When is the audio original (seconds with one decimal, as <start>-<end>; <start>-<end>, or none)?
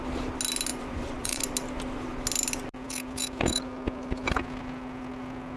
0.0-0.7; 1.4-5.6